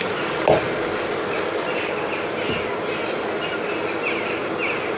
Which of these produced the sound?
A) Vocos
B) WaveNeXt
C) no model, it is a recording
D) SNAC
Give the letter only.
C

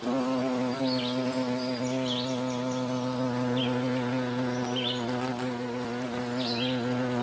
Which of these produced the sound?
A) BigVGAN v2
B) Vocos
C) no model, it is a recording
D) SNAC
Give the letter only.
C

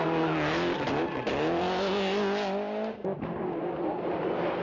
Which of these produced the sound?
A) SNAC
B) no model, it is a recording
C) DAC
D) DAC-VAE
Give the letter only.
B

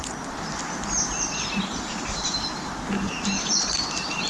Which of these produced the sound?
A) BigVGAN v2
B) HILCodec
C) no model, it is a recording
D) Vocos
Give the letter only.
C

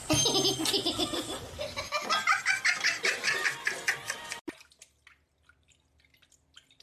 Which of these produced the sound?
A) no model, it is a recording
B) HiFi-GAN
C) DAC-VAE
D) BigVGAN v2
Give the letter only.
A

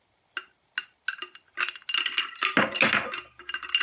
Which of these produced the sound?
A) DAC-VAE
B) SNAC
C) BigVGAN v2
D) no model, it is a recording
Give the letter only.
D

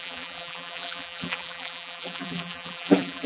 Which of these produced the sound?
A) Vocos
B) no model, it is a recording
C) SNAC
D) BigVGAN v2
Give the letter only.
D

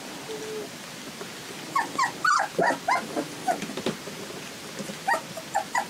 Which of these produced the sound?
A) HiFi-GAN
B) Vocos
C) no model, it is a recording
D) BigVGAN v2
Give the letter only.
C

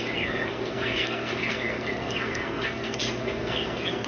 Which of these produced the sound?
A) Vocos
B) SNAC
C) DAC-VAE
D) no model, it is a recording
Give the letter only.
B